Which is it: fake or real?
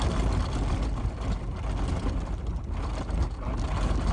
real